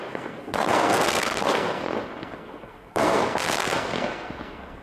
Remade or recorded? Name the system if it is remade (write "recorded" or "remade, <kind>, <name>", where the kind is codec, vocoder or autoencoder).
remade, codec, SNAC